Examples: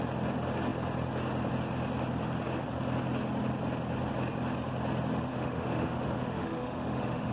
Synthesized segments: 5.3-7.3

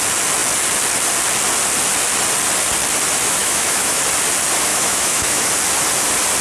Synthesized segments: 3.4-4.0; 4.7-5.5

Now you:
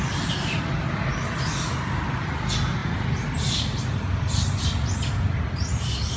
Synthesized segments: none

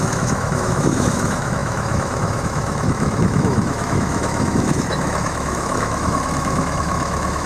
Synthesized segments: 0.0-7.5